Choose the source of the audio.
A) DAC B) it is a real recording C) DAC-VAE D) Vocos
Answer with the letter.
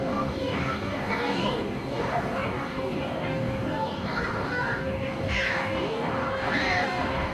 A